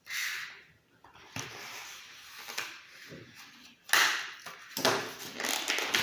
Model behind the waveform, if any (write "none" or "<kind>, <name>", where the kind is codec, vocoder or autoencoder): none